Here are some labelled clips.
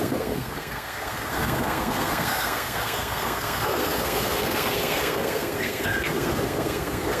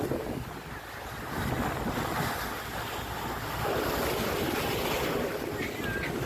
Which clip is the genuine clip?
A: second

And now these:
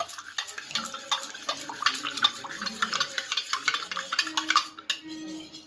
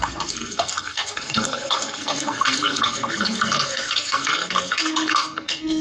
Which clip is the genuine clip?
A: first